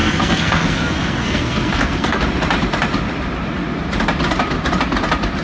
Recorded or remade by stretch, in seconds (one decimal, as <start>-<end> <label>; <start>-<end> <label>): 0.0-2.2 remade; 2.2-5.4 recorded